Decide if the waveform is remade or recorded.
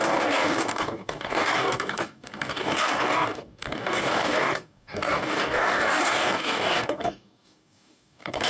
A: remade